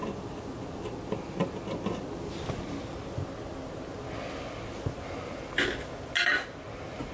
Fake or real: real